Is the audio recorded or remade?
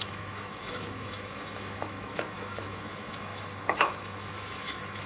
remade